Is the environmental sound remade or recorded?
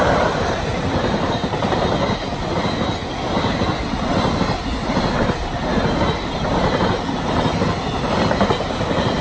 recorded